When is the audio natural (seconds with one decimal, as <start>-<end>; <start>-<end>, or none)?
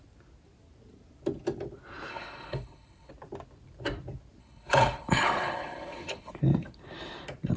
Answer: 0.0-2.1; 3.1-4.4; 6.3-7.6